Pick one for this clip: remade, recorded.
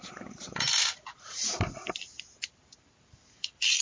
recorded